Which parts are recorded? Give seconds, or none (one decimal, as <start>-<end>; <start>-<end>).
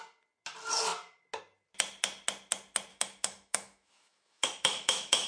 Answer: 0.0-2.9